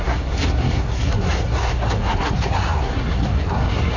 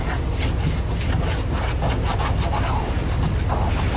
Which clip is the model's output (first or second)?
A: first